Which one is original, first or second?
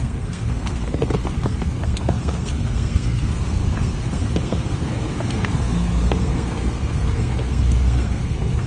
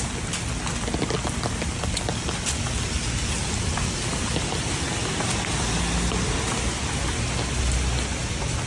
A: second